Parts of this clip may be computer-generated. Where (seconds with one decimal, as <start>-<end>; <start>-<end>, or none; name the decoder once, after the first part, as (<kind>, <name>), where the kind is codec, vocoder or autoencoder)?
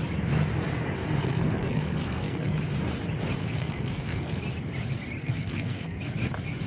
1.2-2.6 (codec, SNAC); 3.4-4.4; 5.2-6.0